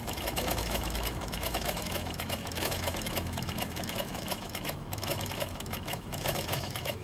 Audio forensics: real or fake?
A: fake